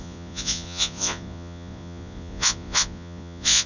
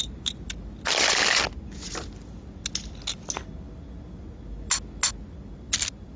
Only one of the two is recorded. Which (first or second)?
second